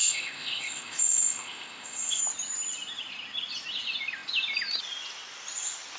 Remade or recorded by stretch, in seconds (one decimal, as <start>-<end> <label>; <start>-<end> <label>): 0.0-2.2 remade; 2.2-6.0 recorded